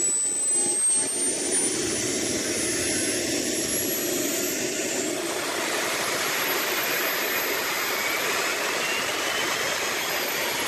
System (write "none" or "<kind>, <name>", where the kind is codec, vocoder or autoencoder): none